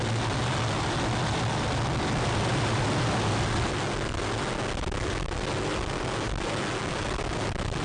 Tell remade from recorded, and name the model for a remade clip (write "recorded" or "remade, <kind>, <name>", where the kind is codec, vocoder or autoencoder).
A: recorded